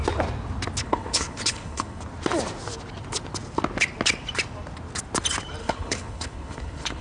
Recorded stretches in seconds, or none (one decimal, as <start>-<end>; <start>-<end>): 0.0-0.8; 2.0-5.6